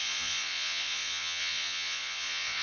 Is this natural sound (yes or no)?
no